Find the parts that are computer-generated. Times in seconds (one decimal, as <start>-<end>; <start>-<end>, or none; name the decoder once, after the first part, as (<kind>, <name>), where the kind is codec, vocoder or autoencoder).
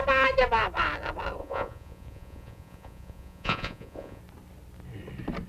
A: 1.4-4.2 (vocoder, Vocos)